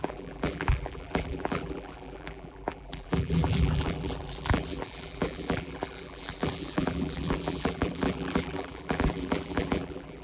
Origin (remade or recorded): remade